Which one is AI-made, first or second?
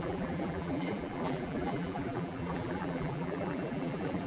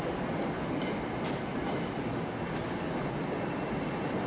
first